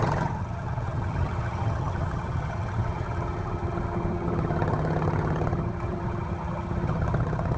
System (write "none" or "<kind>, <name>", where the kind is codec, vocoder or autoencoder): vocoder, HiFi-GAN